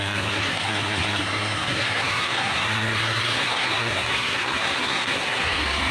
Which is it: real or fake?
fake